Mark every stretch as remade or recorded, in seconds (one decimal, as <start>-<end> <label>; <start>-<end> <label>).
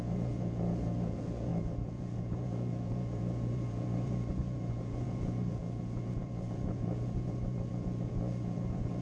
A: 0.0-9.0 remade